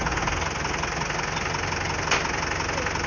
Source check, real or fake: real